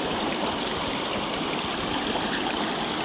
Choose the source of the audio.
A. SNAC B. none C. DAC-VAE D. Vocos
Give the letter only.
B